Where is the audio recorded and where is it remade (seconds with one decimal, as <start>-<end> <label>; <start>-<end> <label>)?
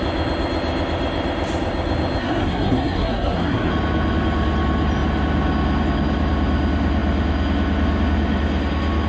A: 0.0-2.2 recorded; 2.2-3.7 remade; 3.7-9.1 recorded